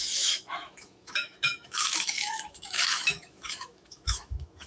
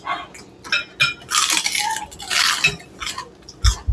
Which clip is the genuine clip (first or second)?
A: second